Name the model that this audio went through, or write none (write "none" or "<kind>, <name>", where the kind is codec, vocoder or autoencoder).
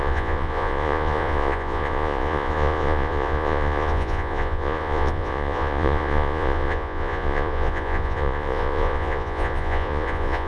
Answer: vocoder, Vocos